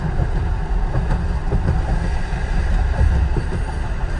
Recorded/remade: recorded